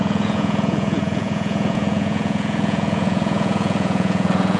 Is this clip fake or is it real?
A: fake